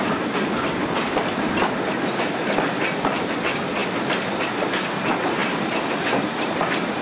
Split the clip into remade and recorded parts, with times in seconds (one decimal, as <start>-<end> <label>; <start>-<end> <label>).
0.0-3.8 recorded; 3.8-4.4 remade; 4.4-5.4 recorded; 5.4-6.6 remade; 6.6-7.0 recorded